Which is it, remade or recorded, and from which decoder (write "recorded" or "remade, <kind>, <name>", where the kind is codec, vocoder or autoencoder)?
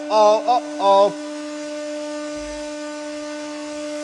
remade, autoencoder, DAC-VAE